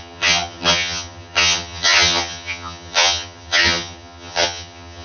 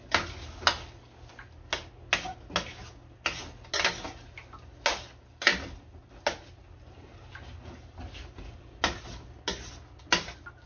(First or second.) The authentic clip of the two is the second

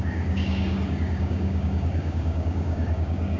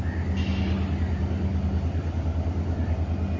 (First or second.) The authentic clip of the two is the second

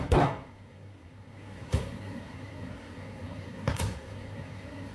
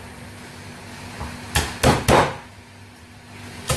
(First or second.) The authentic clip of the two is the second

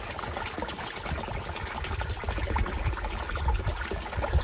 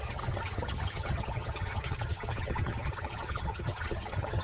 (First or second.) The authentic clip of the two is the first